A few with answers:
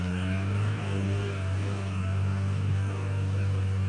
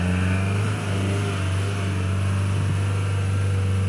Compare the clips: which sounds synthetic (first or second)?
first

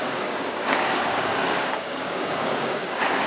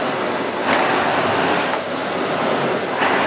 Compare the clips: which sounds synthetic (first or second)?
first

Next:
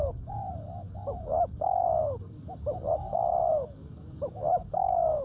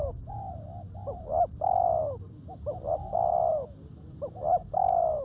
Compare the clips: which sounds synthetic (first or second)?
first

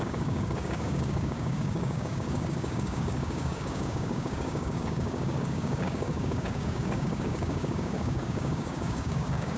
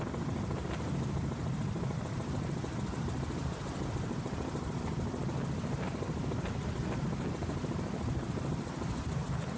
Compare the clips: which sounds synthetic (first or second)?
first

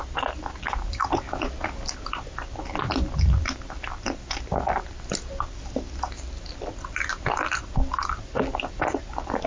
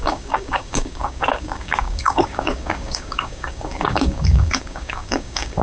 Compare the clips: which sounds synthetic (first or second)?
second